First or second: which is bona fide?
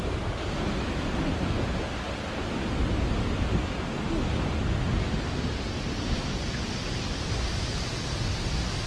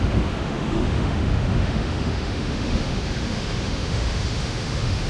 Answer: first